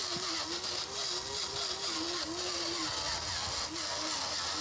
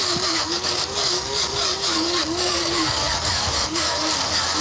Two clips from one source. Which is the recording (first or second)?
first